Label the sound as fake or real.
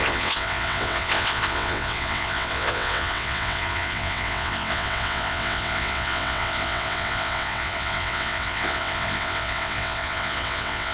fake